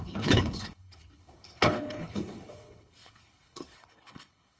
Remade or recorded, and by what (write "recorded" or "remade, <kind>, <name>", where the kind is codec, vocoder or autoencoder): remade, codec, HILCodec